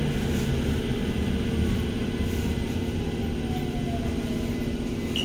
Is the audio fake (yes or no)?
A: no